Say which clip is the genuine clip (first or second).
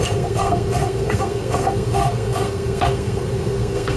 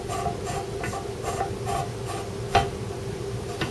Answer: second